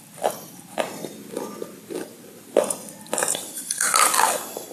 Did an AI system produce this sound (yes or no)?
no